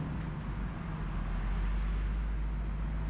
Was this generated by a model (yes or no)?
no